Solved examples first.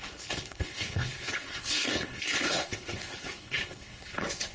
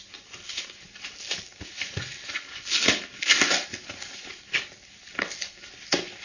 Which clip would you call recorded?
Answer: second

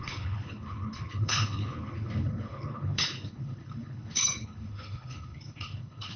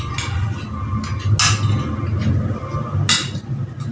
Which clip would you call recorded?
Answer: second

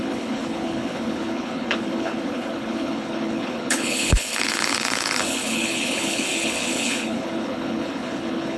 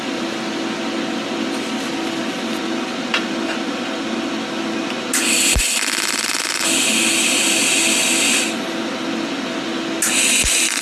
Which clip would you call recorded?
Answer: second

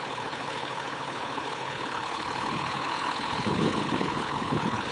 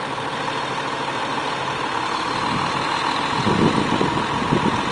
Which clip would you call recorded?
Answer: second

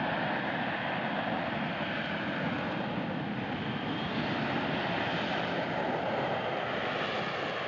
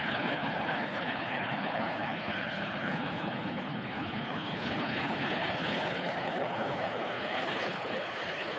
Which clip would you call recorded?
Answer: first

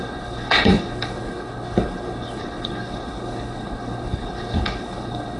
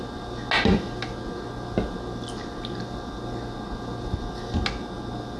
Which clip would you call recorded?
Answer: second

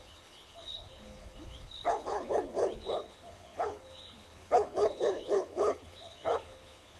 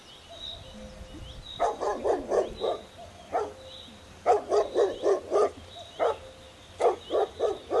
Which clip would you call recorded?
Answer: second